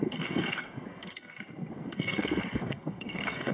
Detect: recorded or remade remade